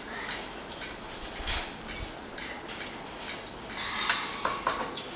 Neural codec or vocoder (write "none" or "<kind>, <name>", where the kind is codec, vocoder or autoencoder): none